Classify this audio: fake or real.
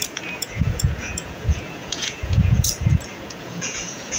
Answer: fake